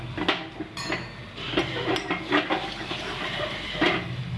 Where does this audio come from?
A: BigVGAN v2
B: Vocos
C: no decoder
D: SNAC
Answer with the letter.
C